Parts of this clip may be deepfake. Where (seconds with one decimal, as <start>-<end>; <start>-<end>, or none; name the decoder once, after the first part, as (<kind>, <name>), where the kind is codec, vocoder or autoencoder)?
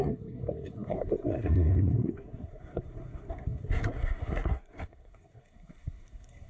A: 0.0-6.5 (codec, SNAC)